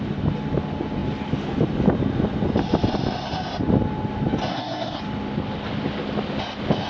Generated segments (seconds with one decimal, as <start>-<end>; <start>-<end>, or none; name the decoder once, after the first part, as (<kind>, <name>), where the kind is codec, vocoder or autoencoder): 4.5-5.0 (codec, SNAC)